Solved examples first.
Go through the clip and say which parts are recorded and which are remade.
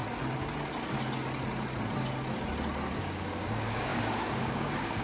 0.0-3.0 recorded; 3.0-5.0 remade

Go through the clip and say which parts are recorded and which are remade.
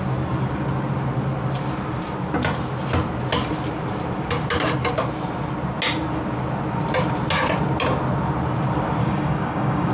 0.0-9.0 recorded; 9.0-9.9 remade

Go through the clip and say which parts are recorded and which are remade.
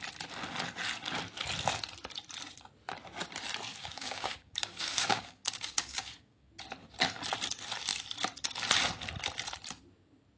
0.0-3.7 recorded; 3.7-6.5 remade; 6.5-10.4 recorded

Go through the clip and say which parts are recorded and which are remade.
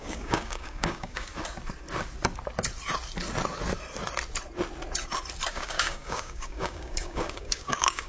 0.0-1.3 remade; 1.3-5.5 recorded; 5.5-8.1 remade